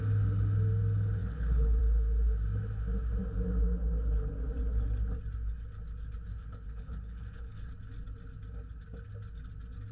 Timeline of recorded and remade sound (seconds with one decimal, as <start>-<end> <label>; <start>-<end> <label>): 0.0-1.2 recorded; 1.2-1.8 remade; 1.8-6.3 recorded; 6.3-7.7 remade; 7.7-9.9 recorded